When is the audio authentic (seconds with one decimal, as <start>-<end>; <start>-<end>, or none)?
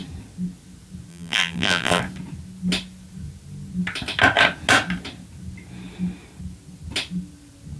0.0-1.1; 2.0-7.8